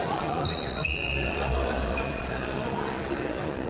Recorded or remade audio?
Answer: remade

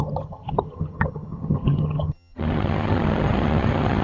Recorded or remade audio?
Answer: remade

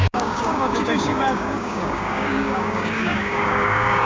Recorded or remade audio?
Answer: remade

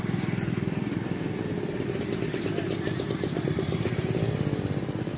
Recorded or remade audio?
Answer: recorded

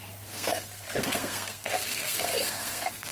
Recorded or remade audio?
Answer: remade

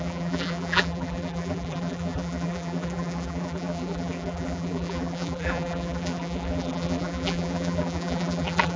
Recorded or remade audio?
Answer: remade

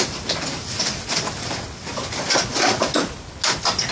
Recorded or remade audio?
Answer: recorded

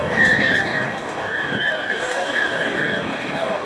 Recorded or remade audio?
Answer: remade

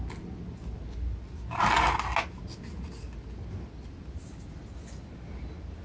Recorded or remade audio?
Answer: recorded